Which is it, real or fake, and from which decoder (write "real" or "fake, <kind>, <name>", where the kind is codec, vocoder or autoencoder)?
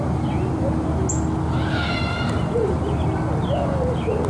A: real